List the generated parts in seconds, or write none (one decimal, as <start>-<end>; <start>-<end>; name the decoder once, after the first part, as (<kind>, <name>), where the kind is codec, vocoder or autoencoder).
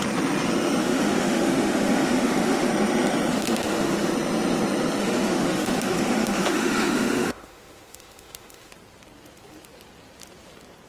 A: 0.8-2.7 (autoencoder, DAC-VAE); 3.3-4.1; 5.0-8.7